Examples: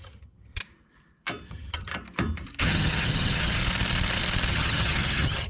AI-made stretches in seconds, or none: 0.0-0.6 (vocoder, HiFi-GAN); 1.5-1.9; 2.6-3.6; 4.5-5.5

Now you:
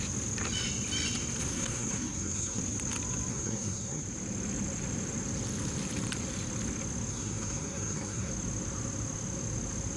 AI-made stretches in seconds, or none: 1.5-2.6 (codec, SNAC); 3.3-4.0; 7.1-8.3

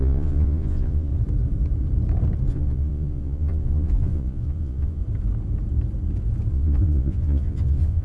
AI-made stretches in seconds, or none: 0.0-1.1 (vocoder, Vocos); 2.5-5.0; 6.5-8.0